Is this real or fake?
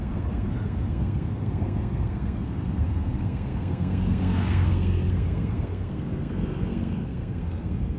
fake